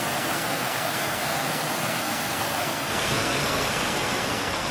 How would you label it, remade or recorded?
remade